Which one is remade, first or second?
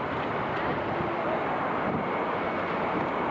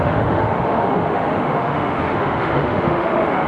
second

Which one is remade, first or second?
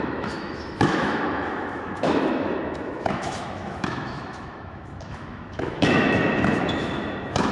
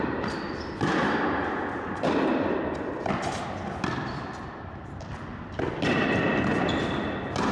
first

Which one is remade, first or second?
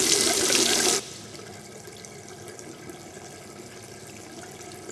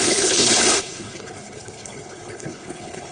second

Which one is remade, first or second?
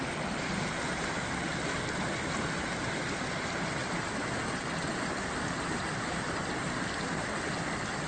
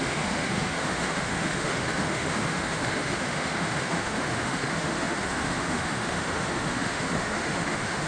second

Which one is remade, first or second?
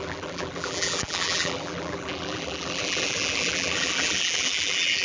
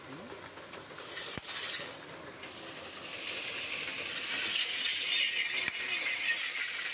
first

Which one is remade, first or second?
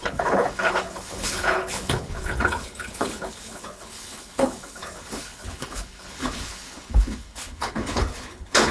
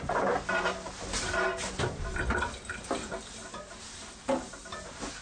first